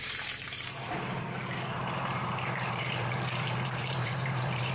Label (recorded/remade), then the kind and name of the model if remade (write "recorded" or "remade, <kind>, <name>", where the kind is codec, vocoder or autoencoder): remade, vocoder, BigVGAN v2